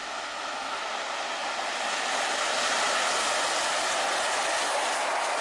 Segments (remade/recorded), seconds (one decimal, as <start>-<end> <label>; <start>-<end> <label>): 0.0-0.8 remade; 0.8-5.4 recorded